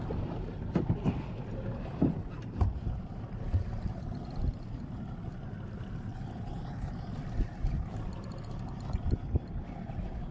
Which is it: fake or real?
real